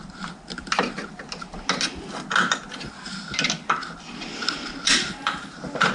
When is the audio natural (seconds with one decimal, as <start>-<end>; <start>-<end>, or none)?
0.0-5.9